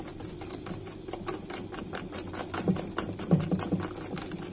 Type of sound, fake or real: real